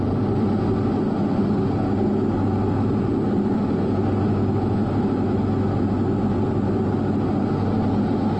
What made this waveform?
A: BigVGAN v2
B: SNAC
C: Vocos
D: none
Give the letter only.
D